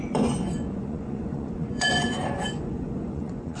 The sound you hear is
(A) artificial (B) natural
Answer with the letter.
A